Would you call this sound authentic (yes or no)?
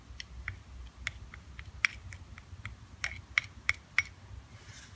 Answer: yes